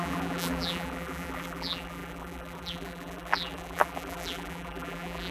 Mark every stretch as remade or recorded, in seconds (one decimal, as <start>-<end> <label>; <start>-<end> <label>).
0.0-5.3 remade